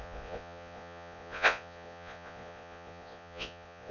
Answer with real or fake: fake